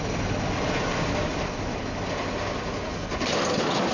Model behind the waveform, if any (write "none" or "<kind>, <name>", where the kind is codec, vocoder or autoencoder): none